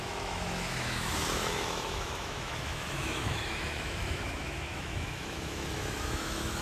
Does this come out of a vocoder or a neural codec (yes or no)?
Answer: yes